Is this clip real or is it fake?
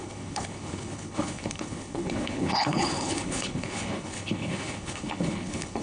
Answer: fake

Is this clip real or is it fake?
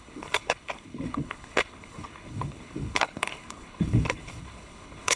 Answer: fake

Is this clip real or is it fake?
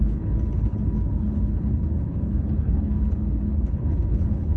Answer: fake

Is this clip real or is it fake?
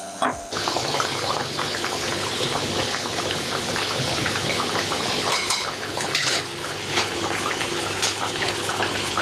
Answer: fake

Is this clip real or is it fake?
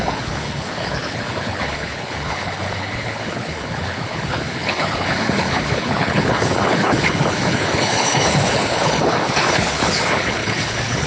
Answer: fake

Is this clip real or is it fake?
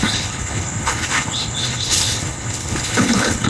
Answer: fake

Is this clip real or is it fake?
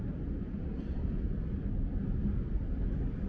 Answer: real